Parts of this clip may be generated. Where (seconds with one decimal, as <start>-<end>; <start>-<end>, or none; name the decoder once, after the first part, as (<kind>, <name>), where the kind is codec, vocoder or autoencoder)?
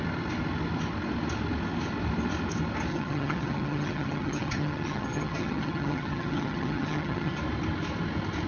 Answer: 2.9-7.4 (vocoder, HiFi-GAN)